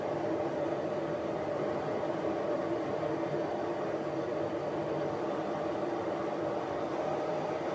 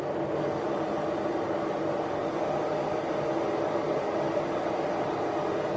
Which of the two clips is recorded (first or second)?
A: second